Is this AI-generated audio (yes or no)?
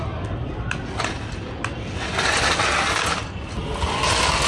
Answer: no